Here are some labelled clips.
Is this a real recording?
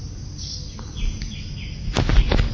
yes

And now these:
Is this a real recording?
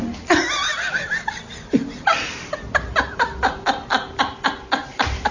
yes